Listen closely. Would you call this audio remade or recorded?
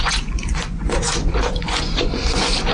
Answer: remade